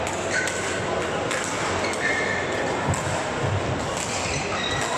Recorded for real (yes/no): yes